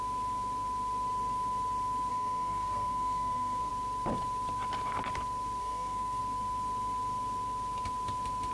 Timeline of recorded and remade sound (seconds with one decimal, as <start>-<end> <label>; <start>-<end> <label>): 0.0-2.1 recorded; 2.1-3.7 remade; 3.7-5.6 recorded; 5.6-6.2 remade; 6.2-8.5 recorded